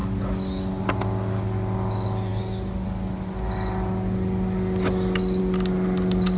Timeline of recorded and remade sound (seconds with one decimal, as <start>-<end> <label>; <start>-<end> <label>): 0.0-6.4 recorded